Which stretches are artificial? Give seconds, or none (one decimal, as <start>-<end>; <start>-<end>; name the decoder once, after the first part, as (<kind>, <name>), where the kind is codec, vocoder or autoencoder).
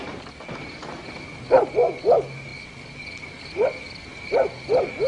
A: none